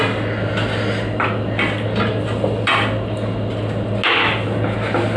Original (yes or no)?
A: yes